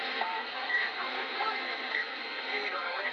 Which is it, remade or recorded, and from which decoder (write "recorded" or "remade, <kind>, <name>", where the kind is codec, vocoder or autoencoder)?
remade, codec, SNAC